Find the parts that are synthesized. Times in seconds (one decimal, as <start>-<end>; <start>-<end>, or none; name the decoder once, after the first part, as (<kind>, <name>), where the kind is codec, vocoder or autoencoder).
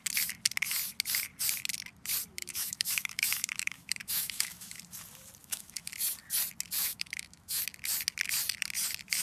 2.4-4.8 (autoencoder, DAC-VAE); 5.4-5.9; 6.8-7.6